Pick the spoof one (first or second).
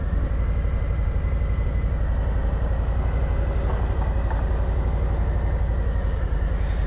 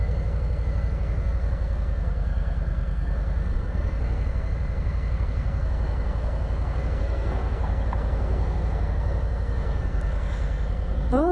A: second